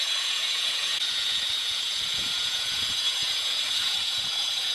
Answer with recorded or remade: remade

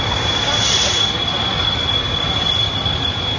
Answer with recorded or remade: recorded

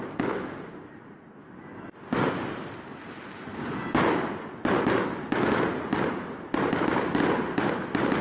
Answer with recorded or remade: recorded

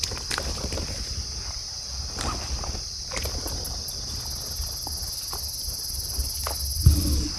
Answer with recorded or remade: recorded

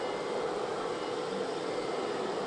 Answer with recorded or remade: recorded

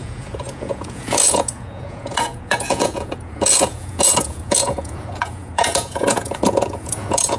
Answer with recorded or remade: remade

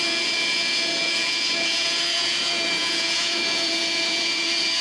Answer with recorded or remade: remade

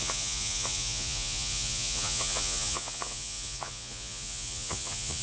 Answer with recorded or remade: remade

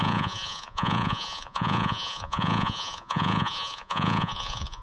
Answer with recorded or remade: remade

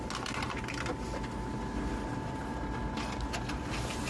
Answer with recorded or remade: recorded